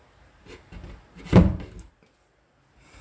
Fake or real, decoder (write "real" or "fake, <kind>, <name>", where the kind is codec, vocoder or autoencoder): real